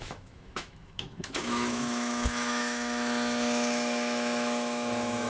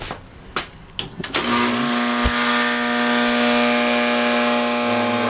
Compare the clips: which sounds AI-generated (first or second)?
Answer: first